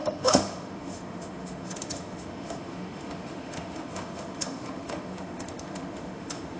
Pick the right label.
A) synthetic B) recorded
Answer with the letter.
A